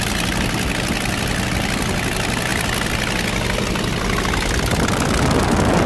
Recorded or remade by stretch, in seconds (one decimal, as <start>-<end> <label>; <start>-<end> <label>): 0.0-5.9 recorded